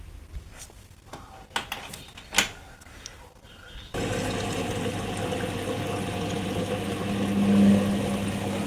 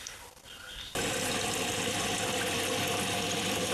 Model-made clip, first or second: second